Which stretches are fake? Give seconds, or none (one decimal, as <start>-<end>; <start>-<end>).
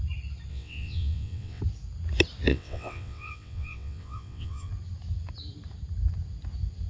0.5-1.6; 2.5-4.7